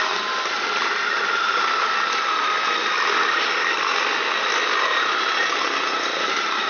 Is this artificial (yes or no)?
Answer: no